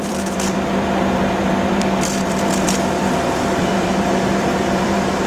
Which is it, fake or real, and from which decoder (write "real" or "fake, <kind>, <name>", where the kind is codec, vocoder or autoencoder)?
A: fake, vocoder, BigVGAN v2